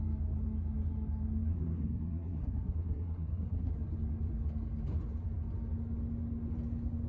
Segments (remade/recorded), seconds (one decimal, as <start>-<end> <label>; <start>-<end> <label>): 0.0-1.5 recorded; 1.5-3.7 remade; 3.7-7.1 recorded